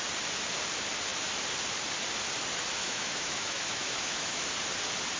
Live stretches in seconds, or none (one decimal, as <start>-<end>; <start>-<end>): 0.0-2.8; 4.4-5.2